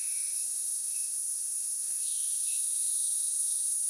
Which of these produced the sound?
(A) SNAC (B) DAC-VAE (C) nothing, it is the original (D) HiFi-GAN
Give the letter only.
B